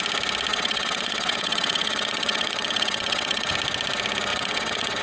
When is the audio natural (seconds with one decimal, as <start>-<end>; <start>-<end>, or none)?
0.0-0.5; 3.5-4.3